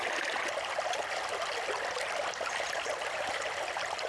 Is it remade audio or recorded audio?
remade